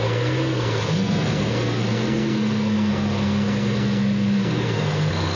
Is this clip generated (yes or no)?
yes